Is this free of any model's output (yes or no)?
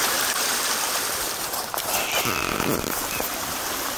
no